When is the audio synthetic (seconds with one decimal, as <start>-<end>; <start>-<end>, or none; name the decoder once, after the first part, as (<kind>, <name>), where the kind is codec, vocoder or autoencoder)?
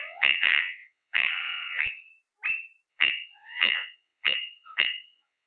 0.0-2.1 (vocoder, WaveNeXt); 2.9-5.5